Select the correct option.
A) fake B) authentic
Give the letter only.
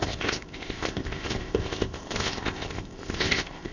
A